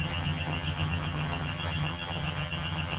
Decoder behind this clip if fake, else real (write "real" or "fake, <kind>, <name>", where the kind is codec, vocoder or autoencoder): fake, vocoder, HiFi-GAN